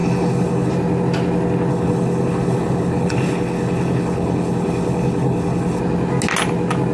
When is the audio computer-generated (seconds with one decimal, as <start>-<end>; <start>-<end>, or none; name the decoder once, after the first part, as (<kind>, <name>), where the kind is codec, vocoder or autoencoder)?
0.0-0.7 (codec, HILCodec); 1.7-5.8